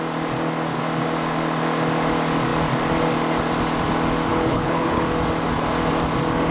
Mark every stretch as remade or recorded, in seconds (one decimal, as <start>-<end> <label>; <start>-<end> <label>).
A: 0.0-4.3 recorded; 4.3-5.0 remade; 5.0-6.5 recorded